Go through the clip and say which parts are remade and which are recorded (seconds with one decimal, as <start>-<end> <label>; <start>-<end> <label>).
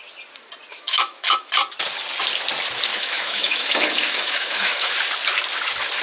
0.0-0.7 recorded; 0.7-1.5 remade; 1.5-2.9 recorded; 2.9-4.9 remade; 4.9-6.0 recorded